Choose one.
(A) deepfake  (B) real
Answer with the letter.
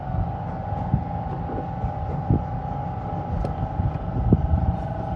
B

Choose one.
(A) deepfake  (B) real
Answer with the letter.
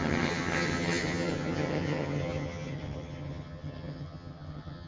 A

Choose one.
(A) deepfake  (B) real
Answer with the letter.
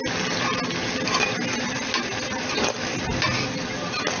B